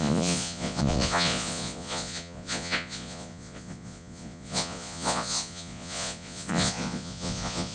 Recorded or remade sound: remade